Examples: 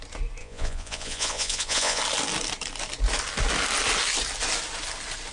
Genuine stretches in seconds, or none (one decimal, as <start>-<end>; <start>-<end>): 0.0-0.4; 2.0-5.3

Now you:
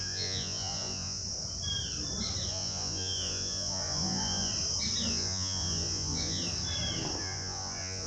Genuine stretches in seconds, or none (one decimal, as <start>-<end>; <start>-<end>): 1.2-2.5; 4.5-5.1; 6.4-7.2

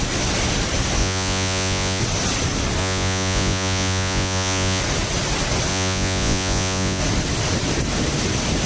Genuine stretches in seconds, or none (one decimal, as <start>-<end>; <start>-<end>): 0.0-1.0; 2.0-2.8; 4.8-5.7; 7.0-8.7

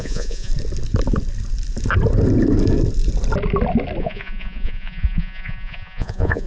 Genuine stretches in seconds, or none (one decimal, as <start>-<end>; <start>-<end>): 0.5-4.0